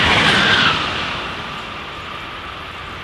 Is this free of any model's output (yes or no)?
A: yes